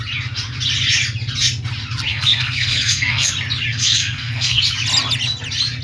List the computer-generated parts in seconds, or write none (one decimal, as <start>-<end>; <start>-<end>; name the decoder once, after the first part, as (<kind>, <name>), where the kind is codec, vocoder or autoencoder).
2.1-3.3 (codec, SNAC); 3.7-4.6